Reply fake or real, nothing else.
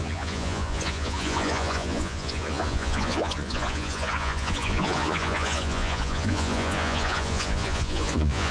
fake